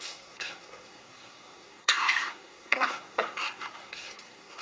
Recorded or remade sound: remade